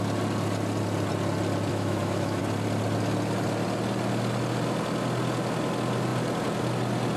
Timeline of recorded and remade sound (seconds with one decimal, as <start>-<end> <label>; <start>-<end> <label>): 0.0-1.7 recorded; 1.7-2.4 remade; 2.4-7.2 recorded